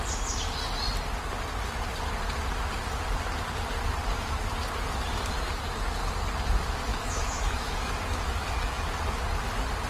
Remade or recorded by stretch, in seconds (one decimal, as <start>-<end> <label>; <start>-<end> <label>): 0.0-6.9 recorded; 6.9-7.9 remade; 7.9-9.9 recorded